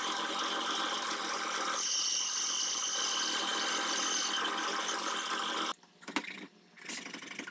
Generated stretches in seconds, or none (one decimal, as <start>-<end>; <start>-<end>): 0.0-2.8